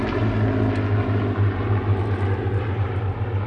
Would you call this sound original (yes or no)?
yes